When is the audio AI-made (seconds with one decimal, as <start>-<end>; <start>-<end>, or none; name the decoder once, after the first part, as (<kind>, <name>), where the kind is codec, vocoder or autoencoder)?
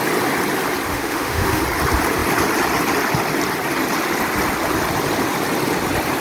0.9-1.6 (autoencoder, DAC-VAE)